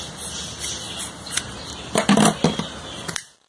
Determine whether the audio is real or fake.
real